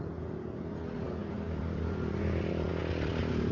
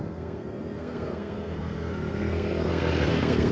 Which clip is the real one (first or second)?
first